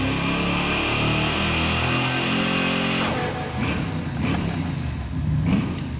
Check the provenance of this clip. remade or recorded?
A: recorded